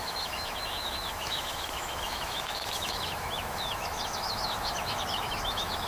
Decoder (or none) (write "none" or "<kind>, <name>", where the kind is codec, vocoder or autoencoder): autoencoder, DAC-VAE